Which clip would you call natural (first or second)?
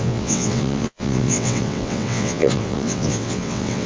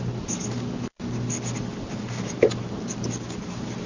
second